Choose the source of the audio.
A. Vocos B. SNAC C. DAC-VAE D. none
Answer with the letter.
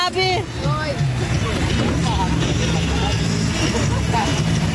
D